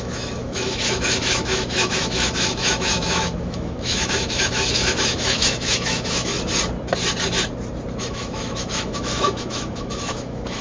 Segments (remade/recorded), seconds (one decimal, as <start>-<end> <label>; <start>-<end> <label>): 0.0-6.3 remade; 6.3-8.0 recorded; 8.0-10.6 remade